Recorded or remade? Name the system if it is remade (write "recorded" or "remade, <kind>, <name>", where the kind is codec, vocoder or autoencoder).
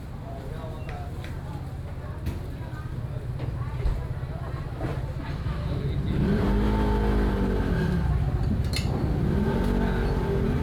recorded